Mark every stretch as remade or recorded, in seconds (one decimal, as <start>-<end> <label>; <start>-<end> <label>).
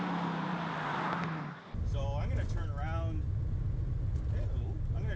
0.0-5.2 recorded